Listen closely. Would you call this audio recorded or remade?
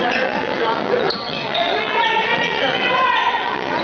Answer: remade